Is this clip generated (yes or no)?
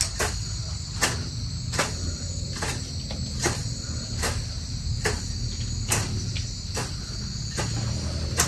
no